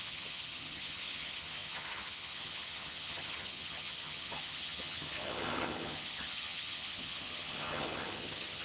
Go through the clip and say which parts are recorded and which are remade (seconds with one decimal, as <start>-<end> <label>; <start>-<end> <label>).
0.0-8.6 remade